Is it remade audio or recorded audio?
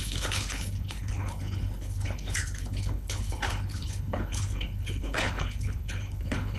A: remade